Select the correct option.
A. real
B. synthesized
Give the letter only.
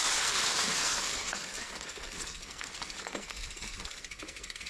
B